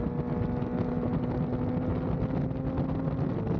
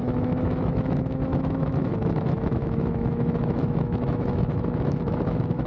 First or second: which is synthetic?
second